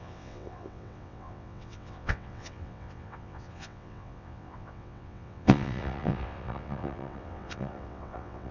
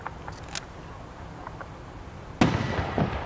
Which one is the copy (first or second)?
first